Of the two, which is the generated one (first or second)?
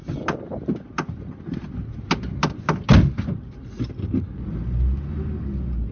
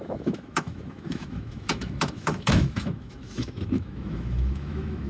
second